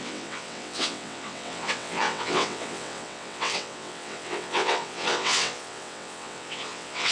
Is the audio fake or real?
fake